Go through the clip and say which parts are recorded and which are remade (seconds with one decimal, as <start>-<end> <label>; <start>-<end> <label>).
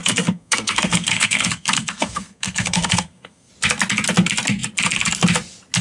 0.0-3.5 remade; 3.5-5.8 recorded